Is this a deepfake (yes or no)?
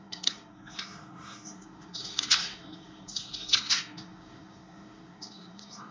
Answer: yes